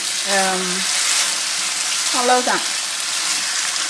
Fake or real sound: real